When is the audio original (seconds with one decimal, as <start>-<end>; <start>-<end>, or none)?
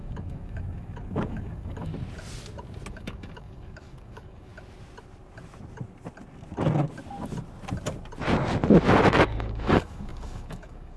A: 1.9-2.9; 4.5-9.1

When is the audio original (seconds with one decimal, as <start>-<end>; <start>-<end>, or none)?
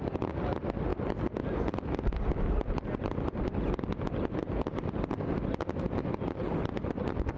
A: 0.0-7.4